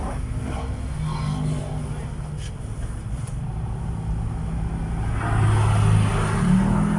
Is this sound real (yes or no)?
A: yes